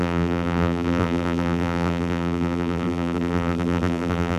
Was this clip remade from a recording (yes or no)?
yes